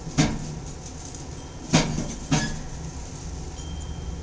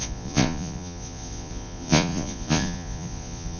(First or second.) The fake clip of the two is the second